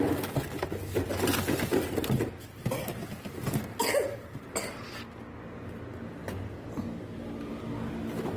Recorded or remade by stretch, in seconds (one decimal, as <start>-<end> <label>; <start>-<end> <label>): 0.0-6.2 recorded; 6.2-7.5 remade; 7.5-8.4 recorded